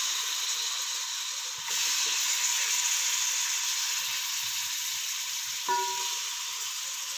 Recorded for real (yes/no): yes